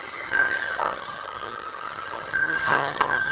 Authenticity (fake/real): fake